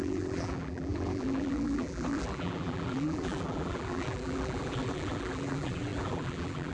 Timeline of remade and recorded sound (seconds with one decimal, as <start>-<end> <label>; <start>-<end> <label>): 0.0-6.7 remade